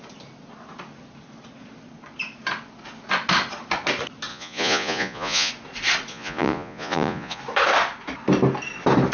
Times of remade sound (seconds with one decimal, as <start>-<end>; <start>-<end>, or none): 4.3-5.5; 6.1-7.4